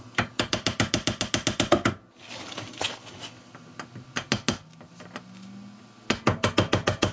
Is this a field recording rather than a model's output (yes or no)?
yes